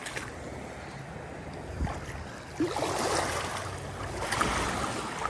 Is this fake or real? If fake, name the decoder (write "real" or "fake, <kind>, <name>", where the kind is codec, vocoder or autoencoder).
real